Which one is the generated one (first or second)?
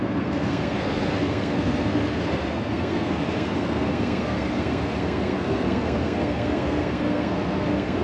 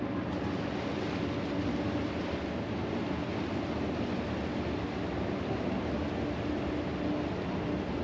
first